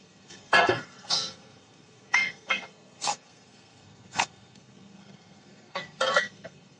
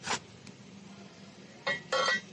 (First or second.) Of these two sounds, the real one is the second